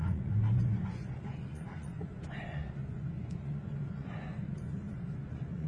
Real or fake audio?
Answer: fake